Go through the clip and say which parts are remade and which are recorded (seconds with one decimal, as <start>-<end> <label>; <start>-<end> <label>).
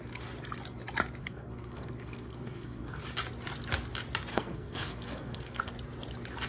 0.0-1.2 recorded; 1.2-3.0 remade; 3.0-4.3 recorded; 4.3-5.7 remade; 5.7-6.5 recorded